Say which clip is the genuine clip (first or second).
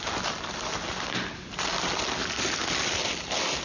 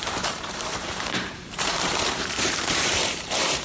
first